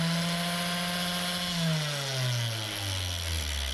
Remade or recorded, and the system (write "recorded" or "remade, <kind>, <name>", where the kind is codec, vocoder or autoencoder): recorded